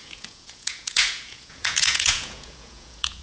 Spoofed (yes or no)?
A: yes